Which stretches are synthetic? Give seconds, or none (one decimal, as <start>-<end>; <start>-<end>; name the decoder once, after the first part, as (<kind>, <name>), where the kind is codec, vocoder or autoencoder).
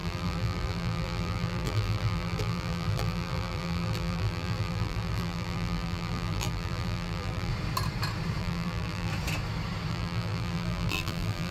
0.0-7.5 (vocoder, BigVGAN v2); 8.4-9.1; 9.9-11.5